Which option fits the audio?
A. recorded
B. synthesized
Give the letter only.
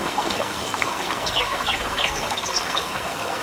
B